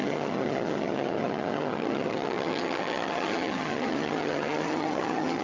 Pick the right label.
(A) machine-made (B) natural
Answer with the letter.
A